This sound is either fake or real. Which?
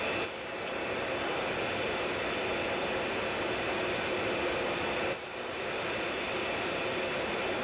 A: real